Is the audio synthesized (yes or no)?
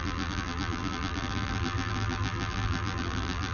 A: yes